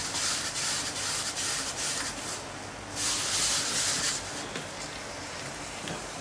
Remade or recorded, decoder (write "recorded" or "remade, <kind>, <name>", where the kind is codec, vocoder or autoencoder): recorded